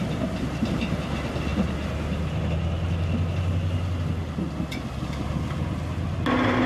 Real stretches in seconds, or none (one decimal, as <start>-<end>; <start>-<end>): 0.0-6.7